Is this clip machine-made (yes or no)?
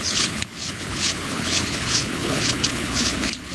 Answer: yes